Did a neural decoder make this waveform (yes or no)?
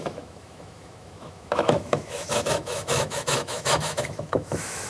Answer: yes